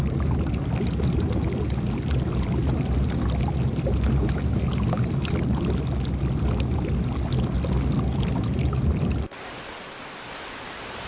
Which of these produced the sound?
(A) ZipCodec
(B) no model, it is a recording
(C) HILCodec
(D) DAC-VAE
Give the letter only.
B